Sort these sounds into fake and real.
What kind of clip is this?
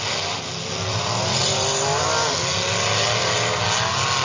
real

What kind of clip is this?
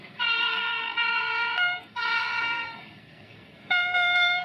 fake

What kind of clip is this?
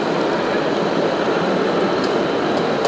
real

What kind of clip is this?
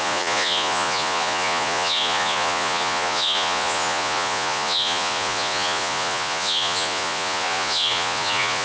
fake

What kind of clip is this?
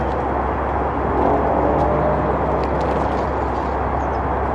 real